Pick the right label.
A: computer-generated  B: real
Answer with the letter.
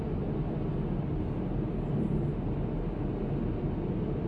B